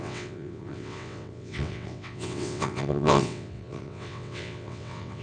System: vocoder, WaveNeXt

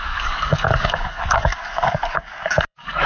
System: codec, DAC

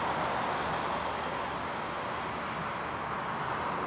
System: none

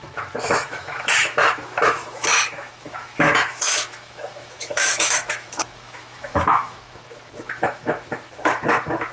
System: autoencoder, DAC-VAE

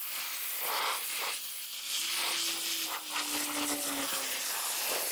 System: none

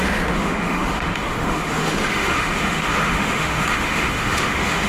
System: autoencoder, DAC-VAE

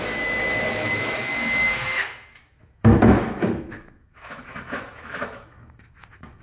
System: autoencoder, DAC-VAE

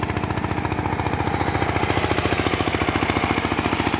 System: none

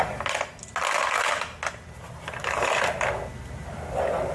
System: none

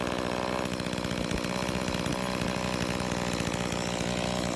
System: none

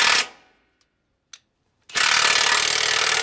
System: none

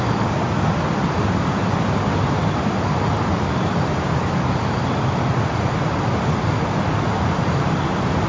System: none